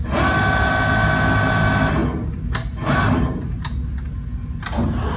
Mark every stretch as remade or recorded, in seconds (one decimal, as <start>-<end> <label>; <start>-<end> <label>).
0.0-5.2 recorded